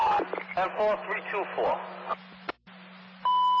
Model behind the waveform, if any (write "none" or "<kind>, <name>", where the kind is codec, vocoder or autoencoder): none